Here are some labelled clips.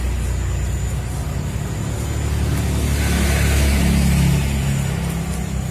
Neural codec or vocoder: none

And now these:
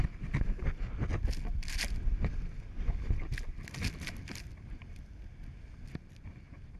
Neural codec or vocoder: none